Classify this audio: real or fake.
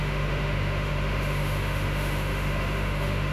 fake